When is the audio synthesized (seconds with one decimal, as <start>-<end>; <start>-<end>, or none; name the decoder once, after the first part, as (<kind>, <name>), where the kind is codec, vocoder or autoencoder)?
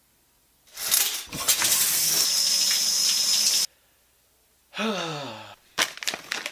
none